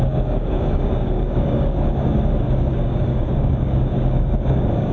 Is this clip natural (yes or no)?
no